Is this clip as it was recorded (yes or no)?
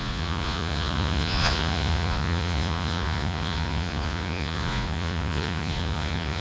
no